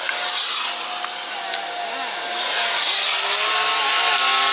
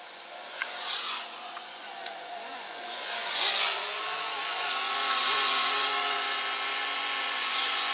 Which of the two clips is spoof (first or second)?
second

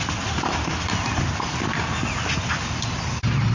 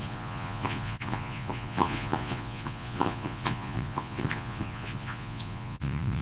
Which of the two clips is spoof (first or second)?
second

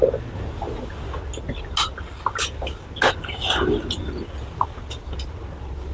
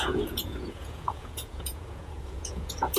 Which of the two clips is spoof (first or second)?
second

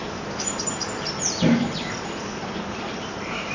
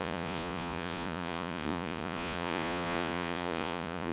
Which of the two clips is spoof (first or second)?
second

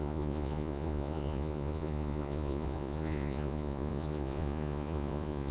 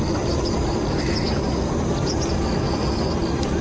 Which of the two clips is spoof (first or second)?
first